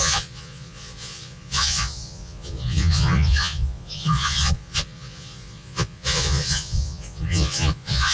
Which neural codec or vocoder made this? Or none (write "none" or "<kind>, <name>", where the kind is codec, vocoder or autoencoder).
vocoder, Vocos